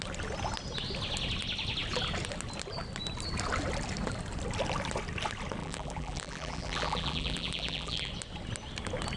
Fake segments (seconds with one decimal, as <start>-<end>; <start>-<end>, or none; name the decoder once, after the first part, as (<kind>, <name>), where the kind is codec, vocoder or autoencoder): 5.6-8.1 (vocoder, BigVGAN v2)

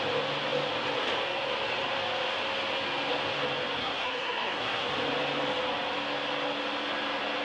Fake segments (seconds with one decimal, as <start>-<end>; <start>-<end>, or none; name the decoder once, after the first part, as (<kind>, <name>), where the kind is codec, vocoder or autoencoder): 3.8-4.9 (codec, SNAC)

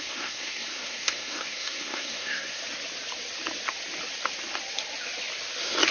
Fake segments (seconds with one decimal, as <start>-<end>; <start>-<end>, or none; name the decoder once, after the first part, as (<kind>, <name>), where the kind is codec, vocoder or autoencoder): 0.0-2.6 (codec, SNAC)